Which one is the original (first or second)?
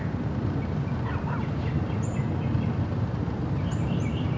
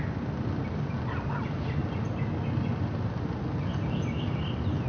second